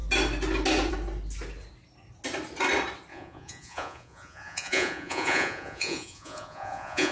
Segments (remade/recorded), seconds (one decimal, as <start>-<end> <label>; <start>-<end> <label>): 0.0-3.1 recorded; 3.1-7.1 remade